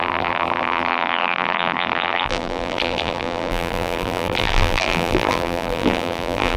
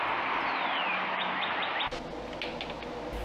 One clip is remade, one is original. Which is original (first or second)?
second